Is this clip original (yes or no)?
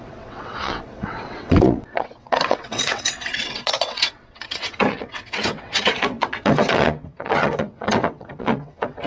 no